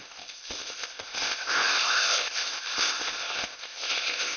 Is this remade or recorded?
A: remade